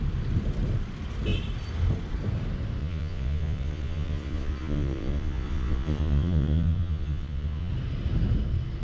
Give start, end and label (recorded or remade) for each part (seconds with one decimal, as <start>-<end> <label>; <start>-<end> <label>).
0.0-2.8 recorded; 2.8-7.7 remade; 7.7-8.8 recorded